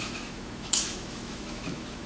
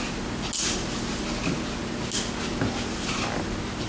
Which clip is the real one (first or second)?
second